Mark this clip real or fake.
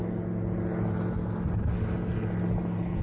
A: real